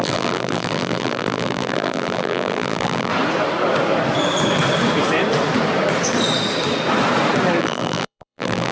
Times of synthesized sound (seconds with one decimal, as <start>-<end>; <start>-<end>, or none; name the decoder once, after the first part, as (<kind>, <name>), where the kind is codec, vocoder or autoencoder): 0.0-3.1 (vocoder, BigVGAN v2); 7.6-8.7